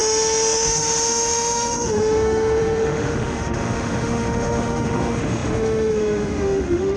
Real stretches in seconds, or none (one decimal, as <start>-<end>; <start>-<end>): none